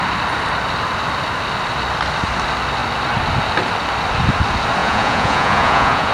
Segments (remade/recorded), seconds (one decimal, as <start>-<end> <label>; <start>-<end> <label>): 0.0-4.8 recorded; 4.8-6.1 remade

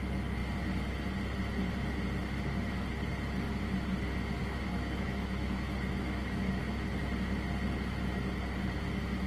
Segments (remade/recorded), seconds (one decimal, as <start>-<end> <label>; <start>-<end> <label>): 0.0-4.4 recorded; 4.4-6.6 remade; 6.6-9.3 recorded

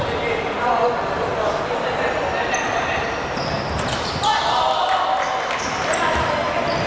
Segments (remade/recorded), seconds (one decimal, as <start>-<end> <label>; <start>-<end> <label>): 0.0-6.9 recorded

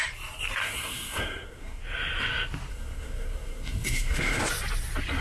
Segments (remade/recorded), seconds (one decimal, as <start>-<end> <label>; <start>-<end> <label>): 0.0-0.6 recorded; 0.6-1.8 remade; 1.8-2.7 recorded; 2.7-4.4 remade; 4.4-5.2 recorded